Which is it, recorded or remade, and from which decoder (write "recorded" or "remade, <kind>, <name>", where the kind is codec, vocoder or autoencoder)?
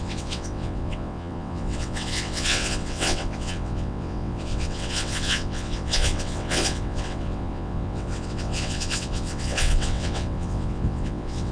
remade, vocoder, WaveNeXt